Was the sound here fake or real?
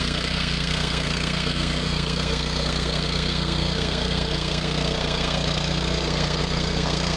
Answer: fake